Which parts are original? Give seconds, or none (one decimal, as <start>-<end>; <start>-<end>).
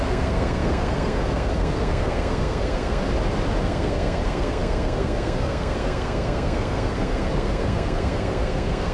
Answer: 3.0-3.6